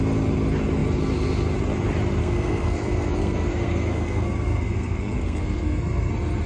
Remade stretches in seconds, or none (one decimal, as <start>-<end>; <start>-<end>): 2.2-6.1